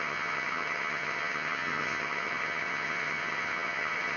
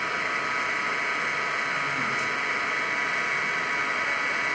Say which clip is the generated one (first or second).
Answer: first